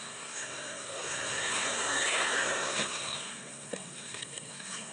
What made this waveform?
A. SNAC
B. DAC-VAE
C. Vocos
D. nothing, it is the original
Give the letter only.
A